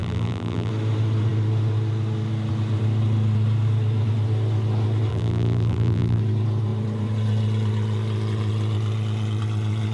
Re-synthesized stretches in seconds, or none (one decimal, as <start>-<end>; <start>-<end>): 0.0-0.7; 5.1-6.2